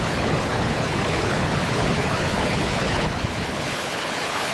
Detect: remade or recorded remade